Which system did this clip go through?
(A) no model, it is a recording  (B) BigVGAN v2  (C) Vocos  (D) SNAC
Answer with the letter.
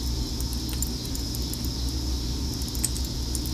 A